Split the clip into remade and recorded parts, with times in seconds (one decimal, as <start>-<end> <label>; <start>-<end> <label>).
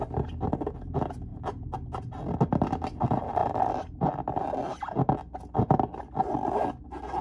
0.0-7.2 recorded